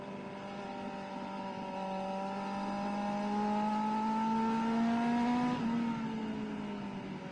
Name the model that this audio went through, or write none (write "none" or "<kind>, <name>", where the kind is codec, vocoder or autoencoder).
none